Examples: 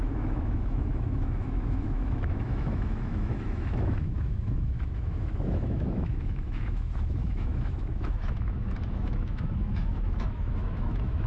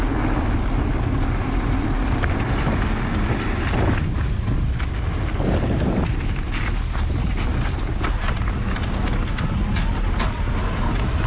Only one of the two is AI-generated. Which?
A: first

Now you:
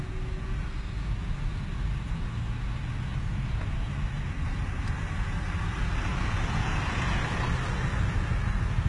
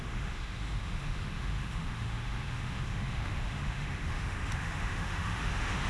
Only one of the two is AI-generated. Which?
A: second